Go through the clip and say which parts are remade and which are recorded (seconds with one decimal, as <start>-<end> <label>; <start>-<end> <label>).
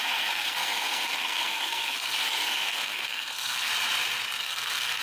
0.0-3.7 remade; 3.7-4.4 recorded; 4.4-5.0 remade